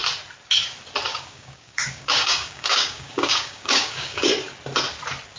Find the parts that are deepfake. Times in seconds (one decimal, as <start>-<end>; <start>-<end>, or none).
1.1-4.3